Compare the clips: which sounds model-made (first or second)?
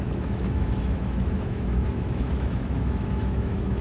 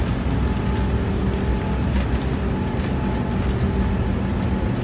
first